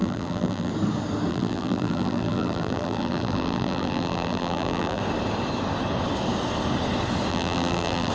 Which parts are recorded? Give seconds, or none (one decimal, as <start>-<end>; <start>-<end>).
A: 0.7-1.3; 5.0-7.3